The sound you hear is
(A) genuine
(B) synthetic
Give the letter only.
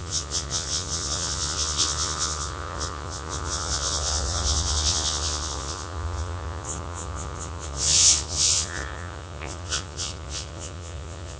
B